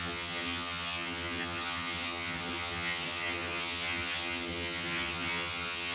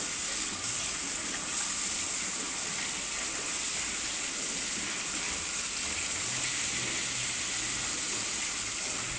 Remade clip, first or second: first